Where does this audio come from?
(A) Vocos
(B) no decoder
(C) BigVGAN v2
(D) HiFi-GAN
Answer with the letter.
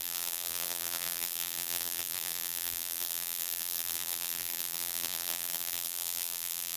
C